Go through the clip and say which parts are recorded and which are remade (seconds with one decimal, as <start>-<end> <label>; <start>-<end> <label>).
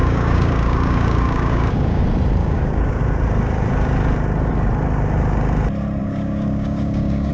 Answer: 0.0-2.0 remade; 2.0-2.4 recorded; 2.4-3.0 remade; 3.0-6.0 recorded; 6.0-7.3 remade